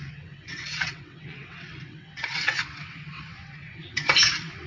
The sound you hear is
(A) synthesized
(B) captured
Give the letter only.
A